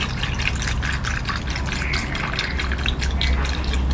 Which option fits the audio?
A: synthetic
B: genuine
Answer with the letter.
B